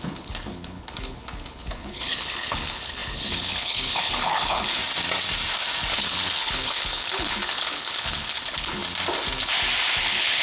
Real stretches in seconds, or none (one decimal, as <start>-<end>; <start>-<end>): 4.8-5.9; 8.8-10.0